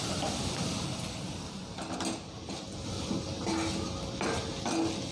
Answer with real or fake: real